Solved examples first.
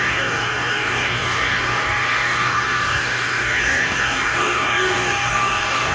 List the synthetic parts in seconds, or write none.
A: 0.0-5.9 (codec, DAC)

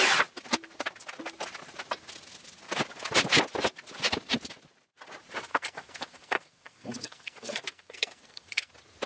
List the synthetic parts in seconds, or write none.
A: 5.5-8.7 (codec, SNAC)

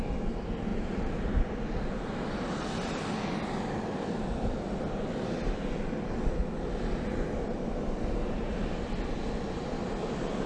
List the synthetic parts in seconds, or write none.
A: 0.7-3.0 (vocoder, BigVGAN v2)

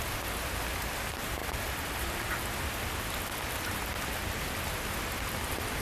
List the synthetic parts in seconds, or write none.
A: none

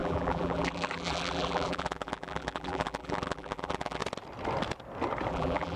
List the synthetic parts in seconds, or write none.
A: 0.0-4.0 (vocoder, BigVGAN v2); 5.3-5.8